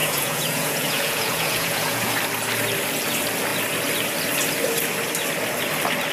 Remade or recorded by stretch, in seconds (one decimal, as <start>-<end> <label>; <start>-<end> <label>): 0.0-2.1 remade; 2.1-6.1 recorded